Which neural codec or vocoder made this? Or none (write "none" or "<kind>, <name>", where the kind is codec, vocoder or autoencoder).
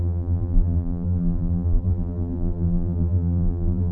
vocoder, BigVGAN v2